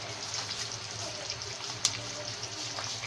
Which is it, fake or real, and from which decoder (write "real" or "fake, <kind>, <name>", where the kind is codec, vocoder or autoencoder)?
real